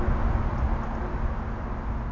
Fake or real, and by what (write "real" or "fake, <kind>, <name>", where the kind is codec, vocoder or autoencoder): real